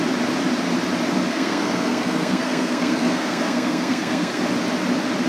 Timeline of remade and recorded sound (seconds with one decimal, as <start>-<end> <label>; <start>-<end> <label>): 0.0-1.3 recorded; 1.3-4.4 remade; 4.4-5.3 recorded